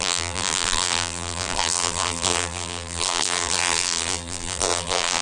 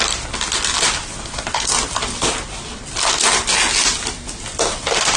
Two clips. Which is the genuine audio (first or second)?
second